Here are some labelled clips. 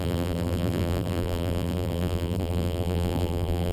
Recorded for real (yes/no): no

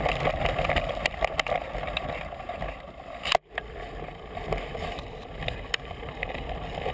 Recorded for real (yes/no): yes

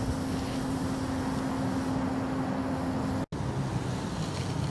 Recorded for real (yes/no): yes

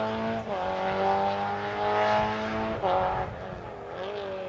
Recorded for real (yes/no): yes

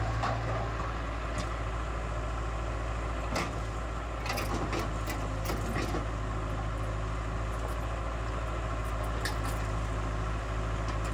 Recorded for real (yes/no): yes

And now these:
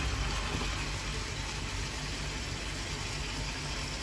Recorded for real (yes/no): yes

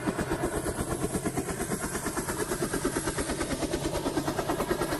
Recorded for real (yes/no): yes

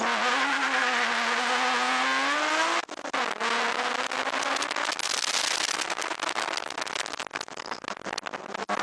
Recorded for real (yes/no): yes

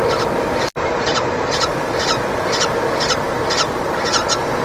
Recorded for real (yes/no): yes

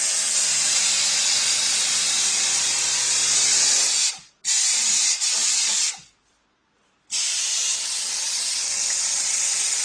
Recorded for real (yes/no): yes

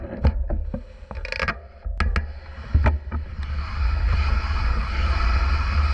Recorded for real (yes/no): yes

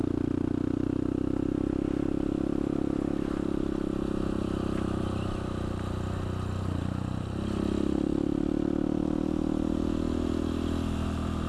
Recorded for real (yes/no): yes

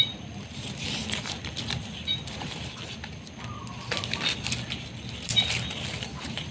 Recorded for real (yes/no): no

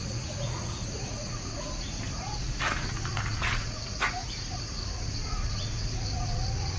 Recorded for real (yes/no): no